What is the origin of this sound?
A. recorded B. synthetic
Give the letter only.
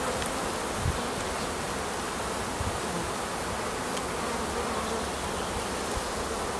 A